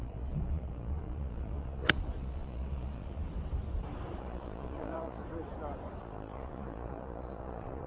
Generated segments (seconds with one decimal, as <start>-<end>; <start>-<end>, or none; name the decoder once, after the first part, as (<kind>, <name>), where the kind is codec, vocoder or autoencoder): 0.0-3.2 (vocoder, Vocos); 4.2-5.2; 6.0-7.9